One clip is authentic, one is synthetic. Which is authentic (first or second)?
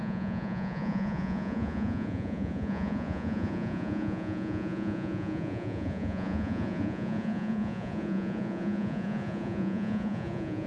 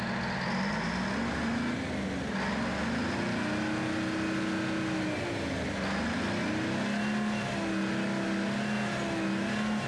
second